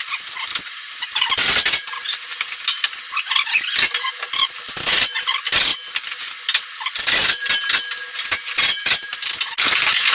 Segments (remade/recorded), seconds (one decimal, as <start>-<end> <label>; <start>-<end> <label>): 0.0-10.1 recorded

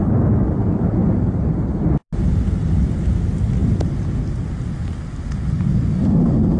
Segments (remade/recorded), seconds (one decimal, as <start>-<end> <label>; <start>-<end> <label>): 0.0-3.6 recorded; 3.6-4.5 remade; 4.5-6.6 recorded

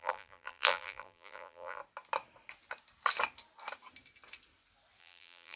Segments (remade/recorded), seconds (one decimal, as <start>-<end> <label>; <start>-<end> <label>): 0.0-1.8 remade; 1.8-5.0 recorded; 5.0-5.6 remade

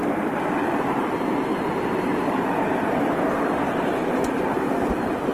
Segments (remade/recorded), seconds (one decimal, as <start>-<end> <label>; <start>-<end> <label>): 0.0-5.3 remade

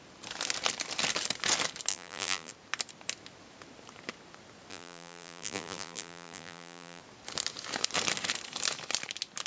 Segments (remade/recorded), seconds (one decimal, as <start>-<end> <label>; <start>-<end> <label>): 0.0-1.9 recorded; 1.9-2.5 remade; 2.5-4.7 recorded; 4.7-7.0 remade; 7.0-9.5 recorded

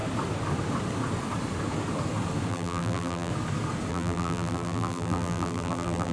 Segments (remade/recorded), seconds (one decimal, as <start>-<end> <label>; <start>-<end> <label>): 0.0-2.5 recorded; 2.5-3.3 remade; 3.3-3.9 recorded; 3.9-6.1 remade

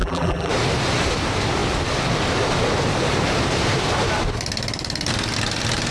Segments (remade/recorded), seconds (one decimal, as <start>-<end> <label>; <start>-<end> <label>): 0.0-0.5 remade; 0.5-5.9 recorded